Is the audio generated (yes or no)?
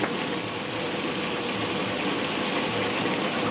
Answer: no